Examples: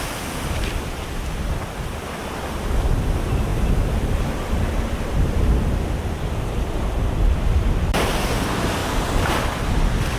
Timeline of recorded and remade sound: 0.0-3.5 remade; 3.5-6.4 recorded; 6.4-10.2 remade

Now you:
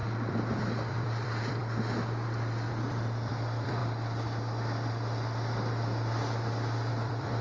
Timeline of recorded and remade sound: 0.0-1.6 remade; 1.6-2.7 recorded; 2.7-3.8 remade; 3.8-6.9 recorded; 6.9-7.4 remade

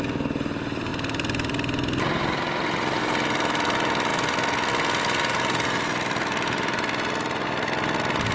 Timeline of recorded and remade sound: 0.0-0.9 recorded; 0.9-3.0 remade; 3.0-8.3 recorded